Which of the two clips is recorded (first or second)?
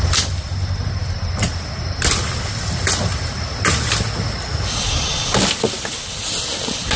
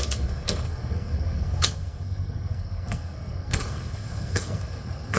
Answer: first